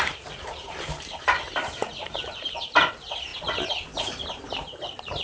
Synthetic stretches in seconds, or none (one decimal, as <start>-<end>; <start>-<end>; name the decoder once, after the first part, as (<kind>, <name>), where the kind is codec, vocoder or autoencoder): 0.0-3.3 (vocoder, BigVGAN v2); 4.0-5.2